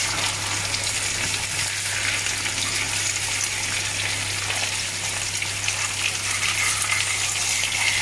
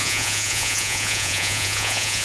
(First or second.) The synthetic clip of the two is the second